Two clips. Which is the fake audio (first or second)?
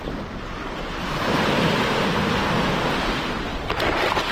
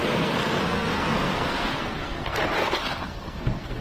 second